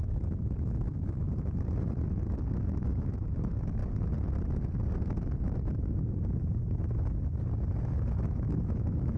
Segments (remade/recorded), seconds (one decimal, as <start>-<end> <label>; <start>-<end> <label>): 0.0-3.8 remade; 3.8-7.8 recorded; 7.8-9.2 remade